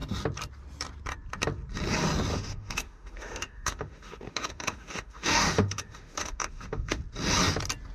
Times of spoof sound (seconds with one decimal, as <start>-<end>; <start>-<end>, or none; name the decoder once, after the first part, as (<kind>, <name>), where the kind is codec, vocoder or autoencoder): 2.3-7.0 (autoencoder, DAC-VAE)